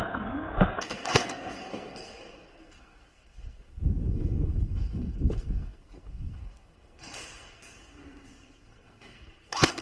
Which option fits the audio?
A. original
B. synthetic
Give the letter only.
B